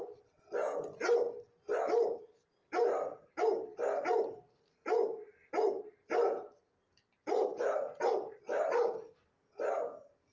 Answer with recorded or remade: recorded